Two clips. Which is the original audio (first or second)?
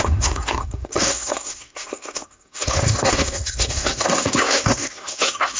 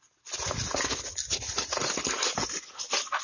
second